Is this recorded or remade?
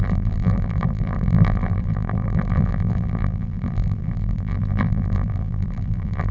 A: remade